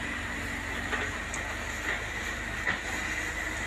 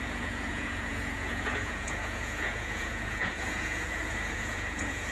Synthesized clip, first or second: second